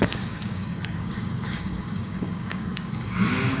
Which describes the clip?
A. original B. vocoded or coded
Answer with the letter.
B